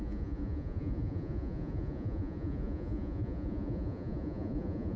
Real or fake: fake